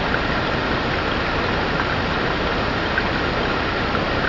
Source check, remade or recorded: recorded